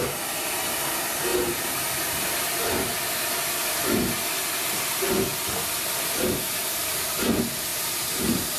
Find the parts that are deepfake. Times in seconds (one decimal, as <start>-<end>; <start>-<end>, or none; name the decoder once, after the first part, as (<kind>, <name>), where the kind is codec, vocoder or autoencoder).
1.3-2.2 (vocoder, BigVGAN v2); 7.7-8.6